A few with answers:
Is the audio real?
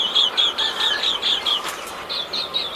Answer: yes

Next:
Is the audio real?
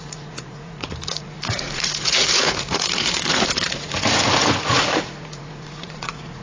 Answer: no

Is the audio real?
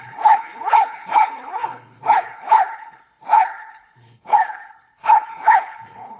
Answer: no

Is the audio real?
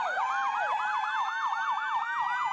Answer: yes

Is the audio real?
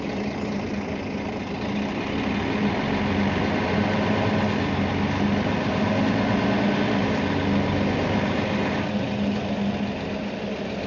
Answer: yes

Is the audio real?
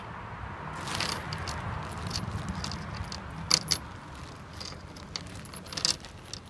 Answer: yes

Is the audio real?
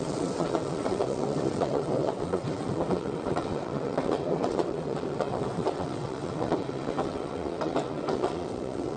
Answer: no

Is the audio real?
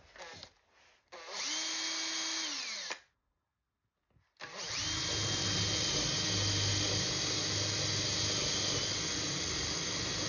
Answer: yes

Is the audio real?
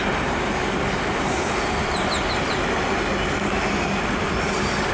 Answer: yes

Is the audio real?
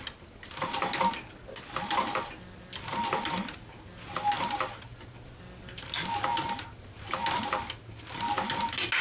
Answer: yes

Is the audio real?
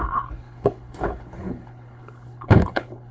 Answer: no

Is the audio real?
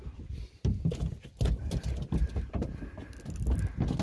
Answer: yes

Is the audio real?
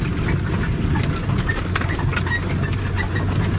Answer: yes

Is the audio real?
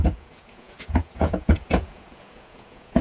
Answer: no